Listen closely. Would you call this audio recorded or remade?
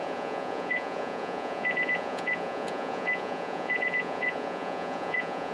remade